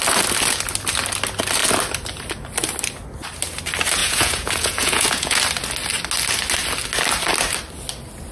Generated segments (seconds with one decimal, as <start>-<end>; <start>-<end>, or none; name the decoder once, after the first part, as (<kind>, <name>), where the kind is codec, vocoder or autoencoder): 4.0-5.4 (vocoder, Vocos)